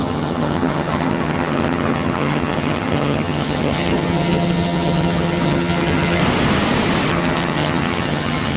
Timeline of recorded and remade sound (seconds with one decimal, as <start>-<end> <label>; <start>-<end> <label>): 0.0-6.2 remade; 6.2-7.1 recorded; 7.1-8.6 remade